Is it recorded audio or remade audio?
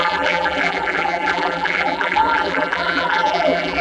remade